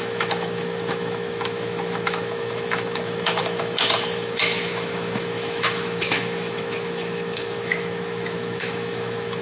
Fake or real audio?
fake